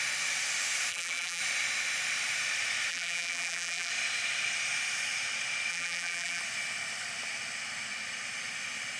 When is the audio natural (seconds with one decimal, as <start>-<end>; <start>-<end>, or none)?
0.0-0.9; 1.4-2.9; 3.9-5.7; 6.4-9.0